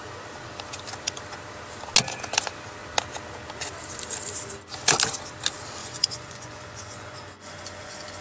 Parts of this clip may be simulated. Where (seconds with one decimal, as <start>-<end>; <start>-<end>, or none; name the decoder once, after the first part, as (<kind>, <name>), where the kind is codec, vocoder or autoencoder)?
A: 5.8-8.2 (vocoder, Vocos)